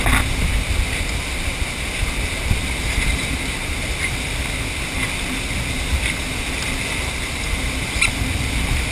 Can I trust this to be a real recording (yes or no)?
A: yes